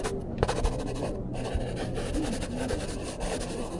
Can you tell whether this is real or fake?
real